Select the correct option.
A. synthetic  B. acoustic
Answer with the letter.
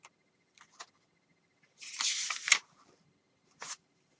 B